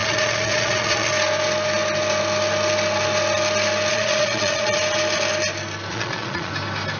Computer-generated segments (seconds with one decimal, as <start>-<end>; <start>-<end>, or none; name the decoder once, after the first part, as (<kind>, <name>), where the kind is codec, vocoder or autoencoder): 0.0-1.1 (vocoder, Vocos); 3.9-4.8; 5.9-6.5